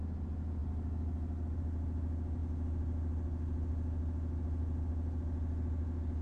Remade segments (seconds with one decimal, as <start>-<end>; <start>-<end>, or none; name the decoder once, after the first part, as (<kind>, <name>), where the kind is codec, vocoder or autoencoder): none